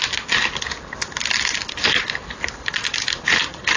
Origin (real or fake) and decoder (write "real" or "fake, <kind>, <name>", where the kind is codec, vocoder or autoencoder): real